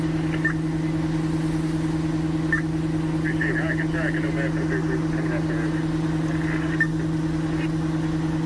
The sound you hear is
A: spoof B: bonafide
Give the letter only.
B